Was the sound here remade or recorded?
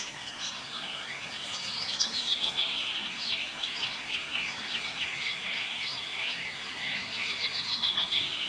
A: remade